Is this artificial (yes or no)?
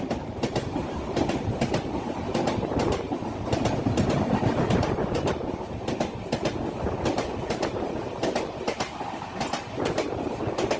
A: no